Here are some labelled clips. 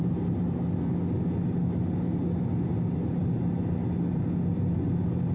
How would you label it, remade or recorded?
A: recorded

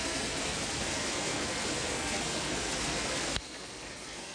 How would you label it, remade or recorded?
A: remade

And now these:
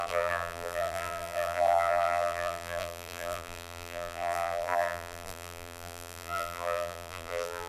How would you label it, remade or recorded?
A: remade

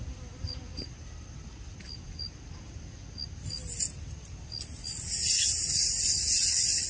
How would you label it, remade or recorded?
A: recorded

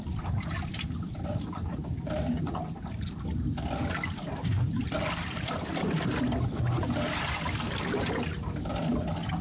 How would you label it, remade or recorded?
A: recorded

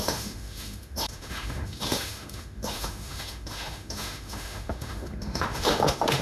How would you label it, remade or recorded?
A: remade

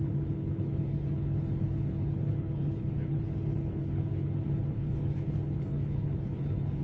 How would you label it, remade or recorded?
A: remade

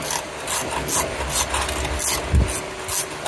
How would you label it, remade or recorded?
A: recorded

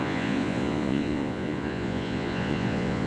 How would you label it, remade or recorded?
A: remade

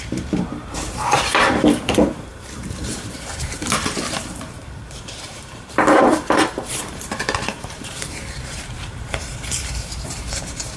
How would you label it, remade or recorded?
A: remade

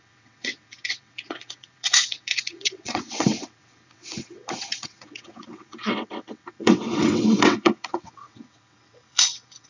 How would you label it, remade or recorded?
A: remade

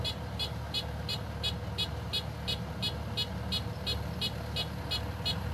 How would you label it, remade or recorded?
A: recorded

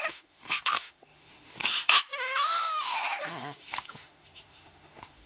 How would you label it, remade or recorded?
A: remade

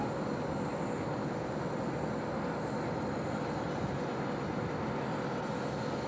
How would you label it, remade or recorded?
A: recorded